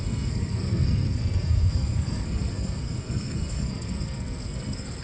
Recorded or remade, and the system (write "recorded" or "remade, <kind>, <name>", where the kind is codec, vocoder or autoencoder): remade, codec, SNAC